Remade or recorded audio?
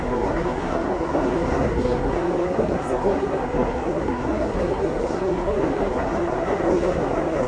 remade